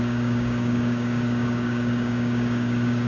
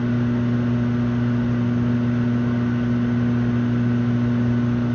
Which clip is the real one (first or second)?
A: second